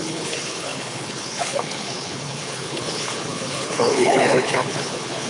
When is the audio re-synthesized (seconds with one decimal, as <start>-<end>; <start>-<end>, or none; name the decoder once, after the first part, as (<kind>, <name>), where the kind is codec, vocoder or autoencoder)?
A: 0.0-5.3 (codec, HILCodec)